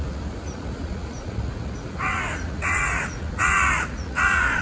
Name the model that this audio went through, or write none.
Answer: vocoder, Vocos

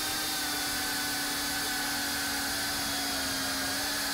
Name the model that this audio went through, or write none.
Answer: none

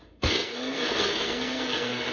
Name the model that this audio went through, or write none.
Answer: codec, SNAC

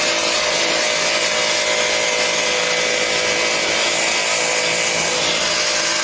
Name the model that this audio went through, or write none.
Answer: none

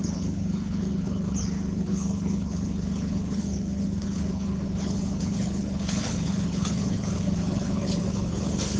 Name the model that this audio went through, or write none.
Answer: codec, HILCodec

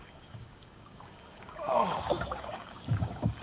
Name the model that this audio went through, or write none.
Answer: codec, DAC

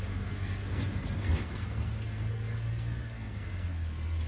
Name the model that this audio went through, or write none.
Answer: codec, SNAC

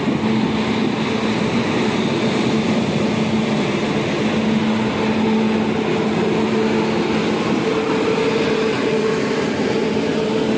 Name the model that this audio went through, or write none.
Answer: none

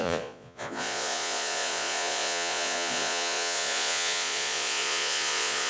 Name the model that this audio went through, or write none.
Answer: vocoder, Vocos